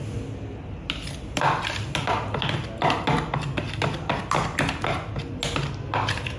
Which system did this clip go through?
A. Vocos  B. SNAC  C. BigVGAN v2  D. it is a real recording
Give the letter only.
D